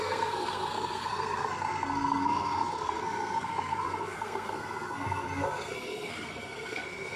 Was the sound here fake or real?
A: fake